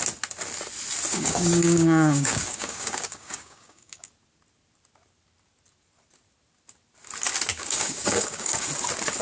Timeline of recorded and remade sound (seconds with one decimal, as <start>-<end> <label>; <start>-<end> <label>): 0.0-1.1 recorded; 1.1-4.1 remade; 4.1-7.5 recorded; 7.5-8.7 remade; 8.7-9.2 recorded